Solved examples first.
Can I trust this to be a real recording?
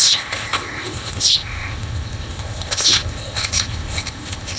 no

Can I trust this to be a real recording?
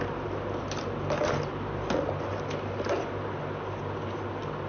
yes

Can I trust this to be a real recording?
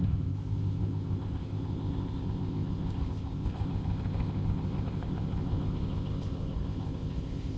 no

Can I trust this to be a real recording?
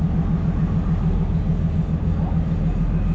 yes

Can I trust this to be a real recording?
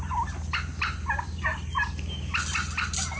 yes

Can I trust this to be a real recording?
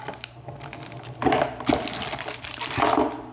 yes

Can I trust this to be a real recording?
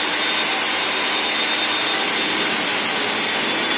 yes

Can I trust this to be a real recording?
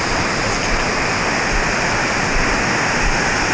yes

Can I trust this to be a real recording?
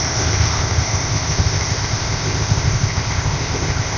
no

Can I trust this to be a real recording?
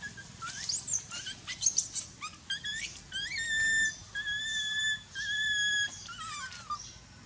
yes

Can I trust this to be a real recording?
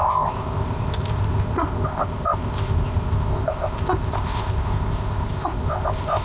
no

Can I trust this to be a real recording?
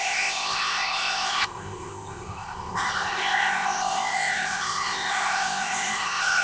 no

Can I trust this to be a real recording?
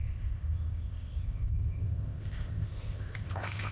no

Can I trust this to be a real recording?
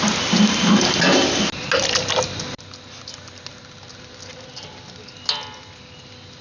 yes